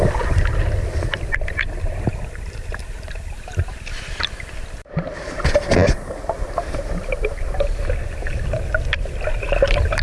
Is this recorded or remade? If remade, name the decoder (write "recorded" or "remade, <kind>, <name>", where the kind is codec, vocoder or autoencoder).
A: recorded